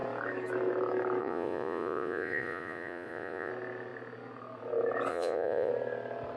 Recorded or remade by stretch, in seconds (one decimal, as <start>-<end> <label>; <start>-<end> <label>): 0.0-1.2 recorded; 1.2-3.5 remade; 3.5-5.1 recorded; 5.1-5.7 remade; 5.7-6.4 recorded

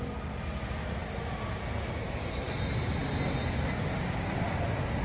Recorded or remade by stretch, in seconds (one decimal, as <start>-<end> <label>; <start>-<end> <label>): 0.0-5.0 recorded

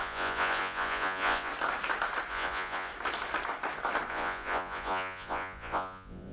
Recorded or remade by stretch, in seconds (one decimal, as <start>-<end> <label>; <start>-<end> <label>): 0.0-1.5 remade; 1.5-2.3 recorded; 2.3-2.9 remade; 2.9-4.1 recorded; 4.1-6.3 remade

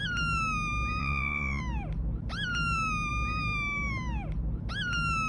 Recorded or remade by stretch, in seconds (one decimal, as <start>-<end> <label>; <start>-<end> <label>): 0.0-1.0 recorded; 1.0-1.6 remade; 1.6-5.3 recorded

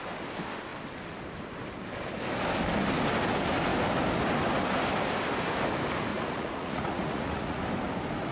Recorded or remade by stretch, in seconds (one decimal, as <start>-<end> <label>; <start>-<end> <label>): 0.0-6.1 recorded; 6.1-7.6 remade; 7.6-8.3 recorded